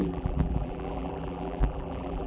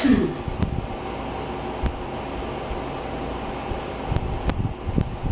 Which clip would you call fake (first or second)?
first